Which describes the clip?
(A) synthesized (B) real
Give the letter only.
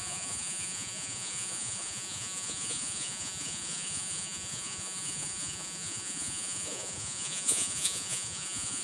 A